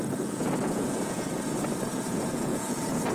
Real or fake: fake